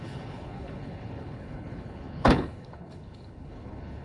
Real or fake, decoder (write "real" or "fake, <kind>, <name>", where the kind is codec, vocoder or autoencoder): fake, codec, HILCodec